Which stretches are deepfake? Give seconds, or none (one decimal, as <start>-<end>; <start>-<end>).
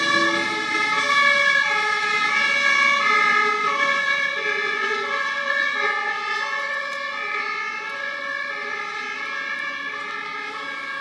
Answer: 3.6-8.8